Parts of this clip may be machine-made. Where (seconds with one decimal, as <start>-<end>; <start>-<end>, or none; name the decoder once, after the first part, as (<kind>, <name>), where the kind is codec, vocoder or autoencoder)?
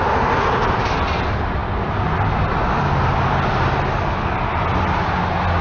none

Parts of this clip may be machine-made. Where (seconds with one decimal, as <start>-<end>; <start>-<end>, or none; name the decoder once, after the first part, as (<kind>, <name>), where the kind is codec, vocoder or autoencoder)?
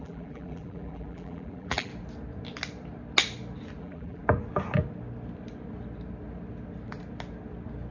0.0-1.9 (vocoder, BigVGAN v2); 3.8-4.2